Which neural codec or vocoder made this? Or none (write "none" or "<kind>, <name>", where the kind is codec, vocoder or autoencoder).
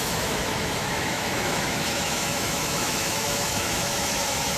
autoencoder, DAC-VAE